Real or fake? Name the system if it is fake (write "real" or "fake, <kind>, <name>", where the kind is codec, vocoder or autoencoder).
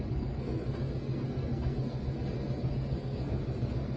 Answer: fake, codec, SNAC